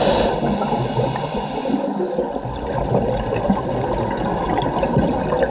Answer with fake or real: real